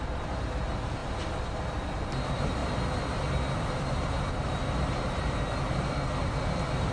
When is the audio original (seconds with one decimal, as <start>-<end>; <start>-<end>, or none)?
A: 0.0-6.9